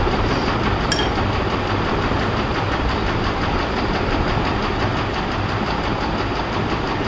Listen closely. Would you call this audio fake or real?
real